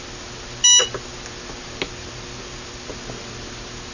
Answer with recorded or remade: recorded